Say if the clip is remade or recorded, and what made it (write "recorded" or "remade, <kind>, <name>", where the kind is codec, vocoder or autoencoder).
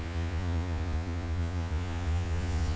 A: remade, vocoder, Vocos